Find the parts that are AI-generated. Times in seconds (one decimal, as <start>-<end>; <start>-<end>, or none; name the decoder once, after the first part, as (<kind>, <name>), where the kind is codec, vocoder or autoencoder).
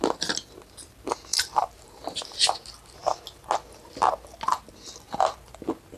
1.3-2.5 (vocoder, BigVGAN v2)